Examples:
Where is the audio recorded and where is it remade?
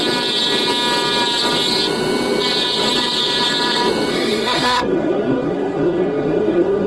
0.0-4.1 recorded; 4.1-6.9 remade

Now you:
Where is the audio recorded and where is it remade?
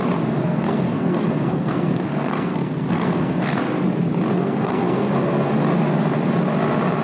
0.0-0.4 recorded; 0.4-3.6 remade; 3.6-4.3 recorded; 4.3-5.1 remade; 5.1-7.0 recorded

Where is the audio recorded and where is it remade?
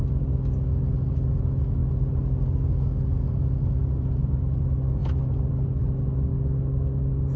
0.0-7.4 recorded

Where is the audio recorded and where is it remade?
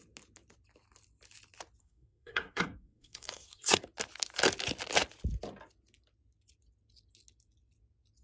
0.0-1.8 recorded; 1.8-3.8 remade; 3.8-8.2 recorded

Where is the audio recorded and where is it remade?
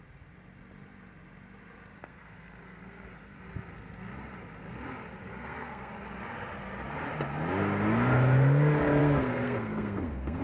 0.0-2.0 recorded; 2.0-3.1 remade; 3.1-5.2 recorded; 5.2-5.9 remade; 5.9-9.0 recorded; 9.0-10.4 remade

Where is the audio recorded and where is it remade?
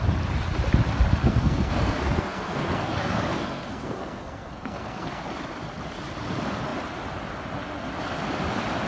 0.0-1.2 recorded; 1.2-5.2 remade; 5.2-8.9 recorded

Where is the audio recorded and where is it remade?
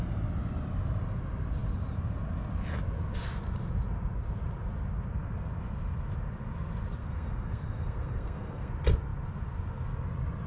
0.0-7.0 recorded; 7.0-8.7 remade; 8.7-10.5 recorded